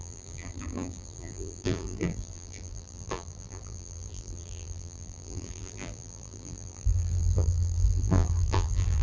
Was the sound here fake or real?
fake